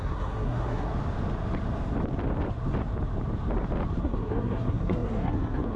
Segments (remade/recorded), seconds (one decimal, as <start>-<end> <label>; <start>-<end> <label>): 0.0-0.9 remade; 0.9-4.0 recorded; 4.0-5.8 remade